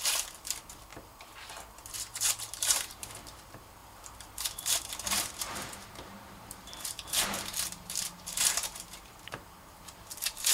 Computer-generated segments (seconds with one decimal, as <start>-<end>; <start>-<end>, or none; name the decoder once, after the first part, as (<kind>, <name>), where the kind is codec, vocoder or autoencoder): 0.0-0.9 (vocoder, BigVGAN v2); 1.5-10.5